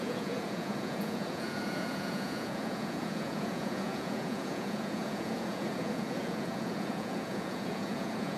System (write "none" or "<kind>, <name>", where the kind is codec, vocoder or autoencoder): vocoder, Vocos